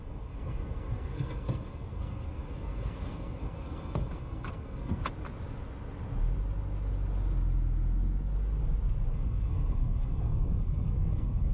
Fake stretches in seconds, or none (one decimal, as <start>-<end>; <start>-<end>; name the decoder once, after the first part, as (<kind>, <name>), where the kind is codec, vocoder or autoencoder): 0.0-5.0 (codec, SNAC); 9.1-11.5